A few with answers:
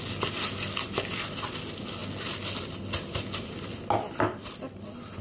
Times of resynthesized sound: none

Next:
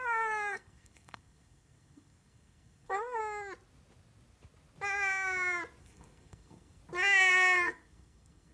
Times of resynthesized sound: 0.0-3.2; 5.8-6.8; 7.3-8.5

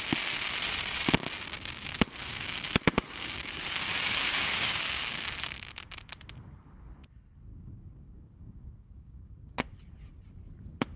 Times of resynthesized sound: 2.3-3.8; 4.2-5.3; 7.5-9.3